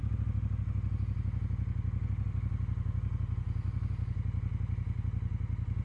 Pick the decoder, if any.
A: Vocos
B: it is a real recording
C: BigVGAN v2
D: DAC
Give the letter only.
B